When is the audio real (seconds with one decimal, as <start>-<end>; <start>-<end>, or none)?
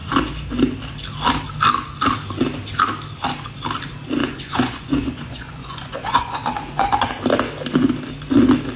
0.0-4.2; 7.1-8.8